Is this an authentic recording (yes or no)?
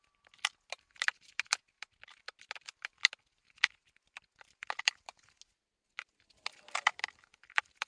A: yes